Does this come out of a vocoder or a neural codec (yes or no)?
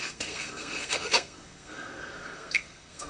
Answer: yes